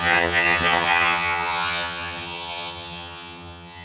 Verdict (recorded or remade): remade